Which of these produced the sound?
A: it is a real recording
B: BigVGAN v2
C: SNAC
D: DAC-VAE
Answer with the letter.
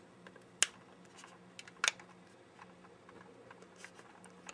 A